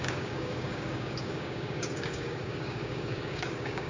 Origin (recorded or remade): remade